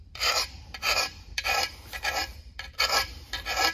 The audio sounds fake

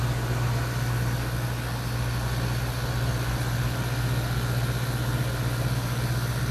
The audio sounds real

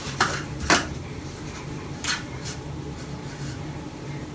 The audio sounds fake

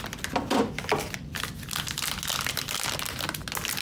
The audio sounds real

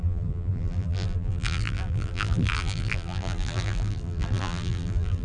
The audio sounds fake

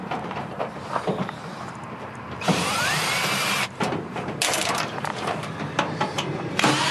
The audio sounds fake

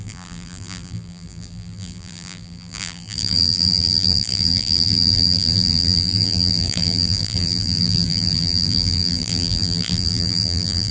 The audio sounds fake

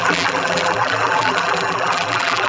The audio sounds fake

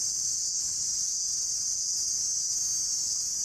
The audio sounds real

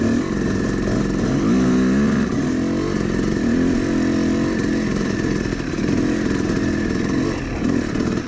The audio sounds real